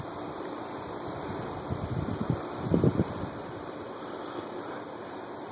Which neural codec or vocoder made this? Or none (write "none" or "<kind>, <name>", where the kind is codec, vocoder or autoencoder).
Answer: vocoder, BigVGAN v2